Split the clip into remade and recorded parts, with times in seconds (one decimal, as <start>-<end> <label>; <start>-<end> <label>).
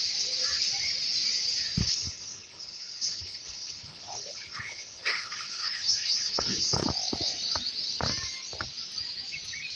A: 0.0-1.8 recorded; 1.8-6.9 remade; 6.9-9.8 recorded